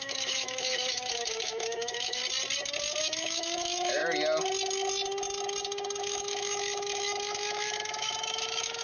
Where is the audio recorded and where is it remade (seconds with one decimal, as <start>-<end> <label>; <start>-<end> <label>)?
0.0-2.2 remade; 2.2-3.0 recorded; 3.0-4.0 remade; 4.0-6.0 recorded; 6.0-8.8 remade